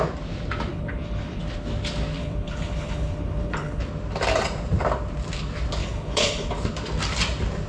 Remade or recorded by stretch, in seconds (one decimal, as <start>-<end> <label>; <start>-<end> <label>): 0.0-0.7 recorded; 0.7-1.4 remade; 1.4-2.2 recorded; 2.2-3.8 remade; 3.8-5.8 recorded; 5.8-6.5 remade; 6.5-7.7 recorded